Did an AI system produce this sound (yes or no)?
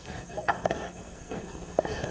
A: yes